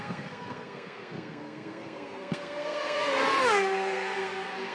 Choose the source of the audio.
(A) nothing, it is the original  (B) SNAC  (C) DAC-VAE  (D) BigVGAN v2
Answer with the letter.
B